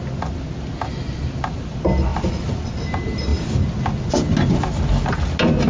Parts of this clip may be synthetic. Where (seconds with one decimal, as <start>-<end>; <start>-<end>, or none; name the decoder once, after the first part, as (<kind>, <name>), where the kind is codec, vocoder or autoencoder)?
none